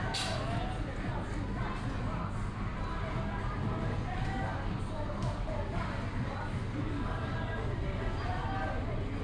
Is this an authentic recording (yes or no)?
yes